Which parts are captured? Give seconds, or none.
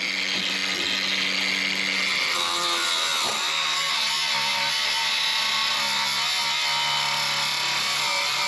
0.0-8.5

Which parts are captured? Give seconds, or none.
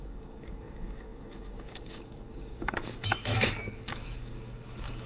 none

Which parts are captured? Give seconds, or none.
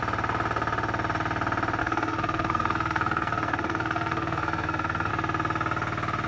0.0-1.8; 5.1-6.3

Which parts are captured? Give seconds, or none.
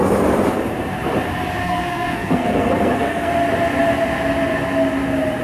0.0-1.6; 3.3-5.4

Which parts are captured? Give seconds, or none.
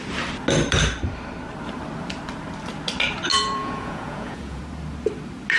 0.0-3.3; 4.6-5.6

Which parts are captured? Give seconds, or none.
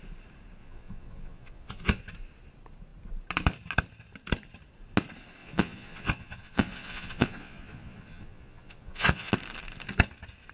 0.0-0.6; 2.0-5.4; 9.3-10.5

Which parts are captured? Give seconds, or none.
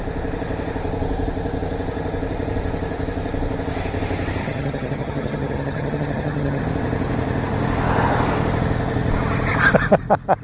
0.0-4.4; 6.6-10.4